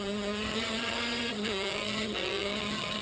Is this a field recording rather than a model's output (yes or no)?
no